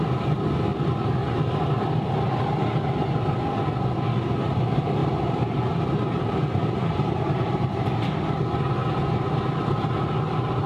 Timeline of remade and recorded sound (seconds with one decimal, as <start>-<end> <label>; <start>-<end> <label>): 0.0-5.0 recorded; 5.0-8.2 remade; 8.2-10.7 recorded